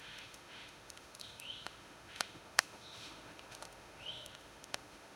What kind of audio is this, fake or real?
fake